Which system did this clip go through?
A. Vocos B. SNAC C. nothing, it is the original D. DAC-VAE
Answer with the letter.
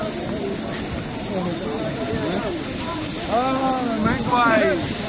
C